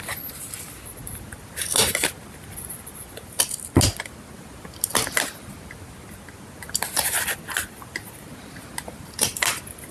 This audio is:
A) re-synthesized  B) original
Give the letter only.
B